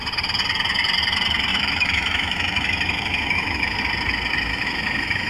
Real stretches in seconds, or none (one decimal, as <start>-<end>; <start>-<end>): 0.0-1.5; 3.8-4.5